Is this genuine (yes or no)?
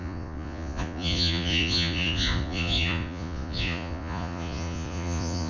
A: no